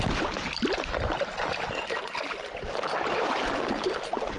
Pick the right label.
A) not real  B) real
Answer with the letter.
B